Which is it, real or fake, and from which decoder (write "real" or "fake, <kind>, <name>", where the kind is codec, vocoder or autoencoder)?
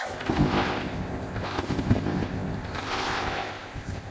fake, codec, ZipCodec